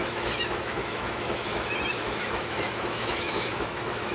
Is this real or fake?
fake